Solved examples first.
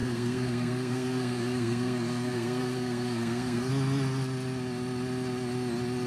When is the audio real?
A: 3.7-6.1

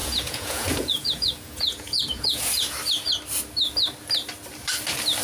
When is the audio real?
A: 2.7-5.2

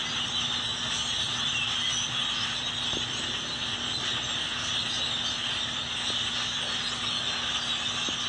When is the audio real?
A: 0.0-8.3

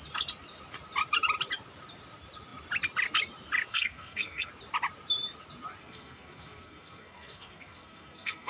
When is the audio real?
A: 0.0-3.7; 4.5-5.8